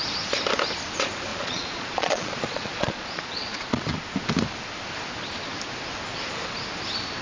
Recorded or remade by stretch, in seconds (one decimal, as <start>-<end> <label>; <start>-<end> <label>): 0.0-1.3 recorded; 1.3-3.9 remade; 3.9-7.2 recorded